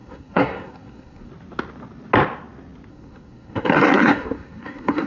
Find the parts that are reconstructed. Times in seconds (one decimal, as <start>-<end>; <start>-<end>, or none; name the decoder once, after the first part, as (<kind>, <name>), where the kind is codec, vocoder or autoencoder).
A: 0.0-1.3 (codec, SNAC); 2.9-5.1